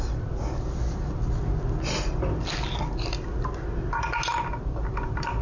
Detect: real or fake real